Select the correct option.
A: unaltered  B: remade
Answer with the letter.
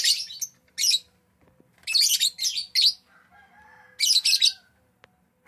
A